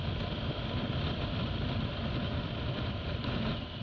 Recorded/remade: recorded